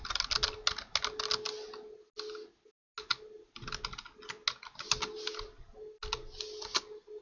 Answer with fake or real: real